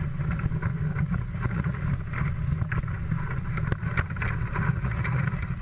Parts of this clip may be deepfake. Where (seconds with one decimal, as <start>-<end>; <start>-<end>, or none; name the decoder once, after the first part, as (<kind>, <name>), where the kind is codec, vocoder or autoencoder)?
1.0-1.8 (vocoder, Vocos); 4.7-5.6